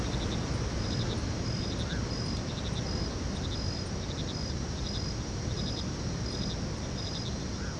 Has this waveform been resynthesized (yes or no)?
no